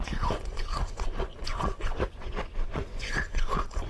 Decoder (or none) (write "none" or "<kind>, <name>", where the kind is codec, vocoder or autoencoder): vocoder, Vocos